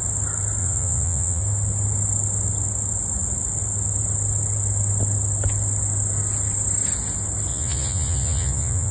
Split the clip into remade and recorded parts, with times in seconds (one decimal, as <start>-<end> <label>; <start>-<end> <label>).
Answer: 0.0-0.6 recorded; 0.6-1.4 remade; 1.4-7.5 recorded; 7.5-8.9 remade